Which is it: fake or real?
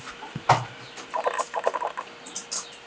real